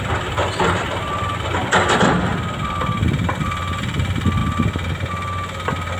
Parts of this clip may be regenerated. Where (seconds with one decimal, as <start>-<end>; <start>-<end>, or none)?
0.0-2.3; 3.8-4.4

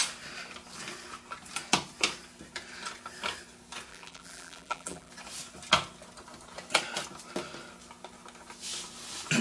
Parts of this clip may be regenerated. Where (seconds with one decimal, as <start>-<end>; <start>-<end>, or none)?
3.9-5.1